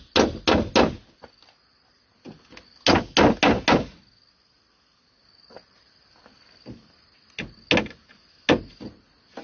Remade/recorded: recorded